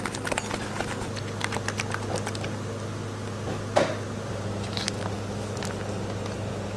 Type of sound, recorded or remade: recorded